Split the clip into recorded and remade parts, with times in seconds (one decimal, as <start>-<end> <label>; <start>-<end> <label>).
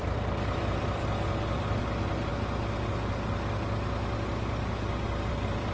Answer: 0.0-2.3 remade; 2.3-5.3 recorded; 5.3-5.7 remade